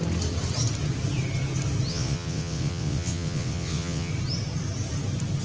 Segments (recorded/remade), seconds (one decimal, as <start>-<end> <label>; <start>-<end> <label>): 0.0-1.9 recorded; 1.9-4.1 remade; 4.1-5.4 recorded